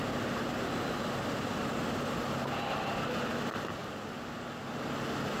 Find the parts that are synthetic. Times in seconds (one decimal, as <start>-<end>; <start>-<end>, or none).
none